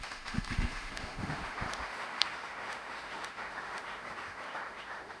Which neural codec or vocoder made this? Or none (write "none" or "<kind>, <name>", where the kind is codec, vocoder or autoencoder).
autoencoder, DAC-VAE